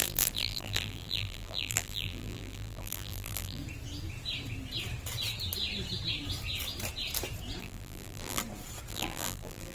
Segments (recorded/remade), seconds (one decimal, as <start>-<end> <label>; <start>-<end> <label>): 0.0-3.6 remade; 3.6-7.6 recorded; 7.6-8.4 remade; 8.4-8.9 recorded; 8.9-9.7 remade